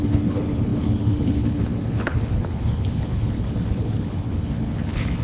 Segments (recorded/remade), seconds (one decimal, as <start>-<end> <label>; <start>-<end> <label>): 0.0-5.2 remade